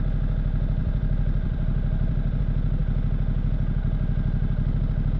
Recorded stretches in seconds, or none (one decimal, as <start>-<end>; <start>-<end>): 0.0-0.8; 2.4-5.2